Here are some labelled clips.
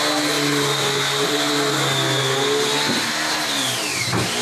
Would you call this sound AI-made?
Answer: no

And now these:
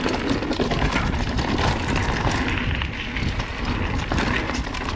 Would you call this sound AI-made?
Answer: no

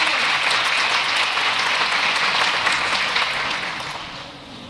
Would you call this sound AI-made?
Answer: yes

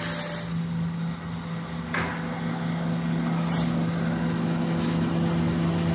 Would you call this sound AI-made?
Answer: no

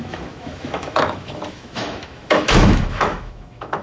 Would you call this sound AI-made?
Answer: yes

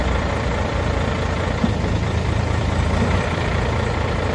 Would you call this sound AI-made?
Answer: no